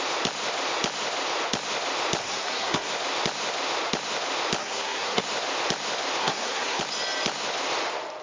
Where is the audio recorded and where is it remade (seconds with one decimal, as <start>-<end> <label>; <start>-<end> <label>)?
0.0-2.2 recorded; 2.2-2.9 remade; 2.9-4.6 recorded; 4.6-5.2 remade; 5.2-6.2 recorded; 6.2-6.8 remade; 6.8-8.2 recorded